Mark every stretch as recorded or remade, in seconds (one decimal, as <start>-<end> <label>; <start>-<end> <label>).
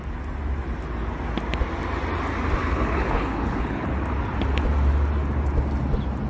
0.0-2.6 recorded; 2.6-3.9 remade; 3.9-6.3 recorded